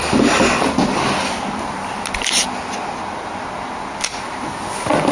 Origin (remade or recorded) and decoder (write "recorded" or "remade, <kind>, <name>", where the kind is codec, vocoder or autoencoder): recorded